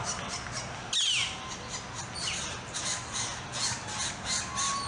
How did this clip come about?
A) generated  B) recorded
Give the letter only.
B